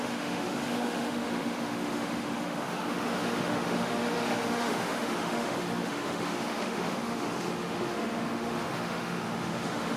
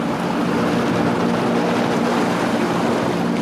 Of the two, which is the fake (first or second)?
first